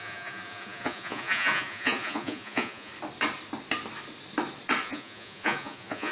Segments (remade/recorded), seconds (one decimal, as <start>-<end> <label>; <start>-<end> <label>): 0.0-2.9 remade; 2.9-4.8 recorded; 4.8-6.1 remade